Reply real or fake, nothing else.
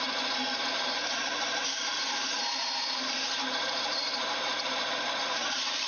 fake